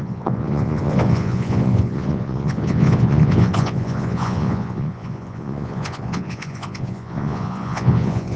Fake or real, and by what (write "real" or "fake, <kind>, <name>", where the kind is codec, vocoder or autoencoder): fake, vocoder, Vocos